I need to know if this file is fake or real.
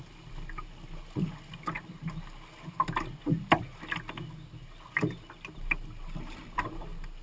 real